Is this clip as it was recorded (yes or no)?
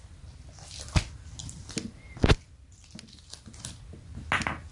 yes